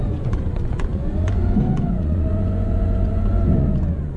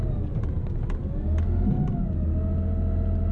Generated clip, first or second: first